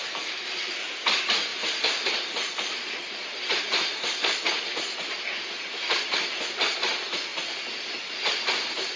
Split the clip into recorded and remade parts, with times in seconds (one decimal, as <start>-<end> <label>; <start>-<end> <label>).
0.0-9.0 recorded